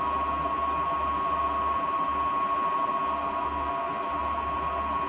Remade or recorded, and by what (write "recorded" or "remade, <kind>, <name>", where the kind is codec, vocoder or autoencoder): recorded